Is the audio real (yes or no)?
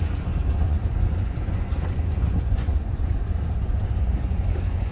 no